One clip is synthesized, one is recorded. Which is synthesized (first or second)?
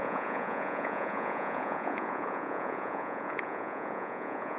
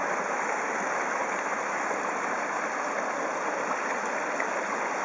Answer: first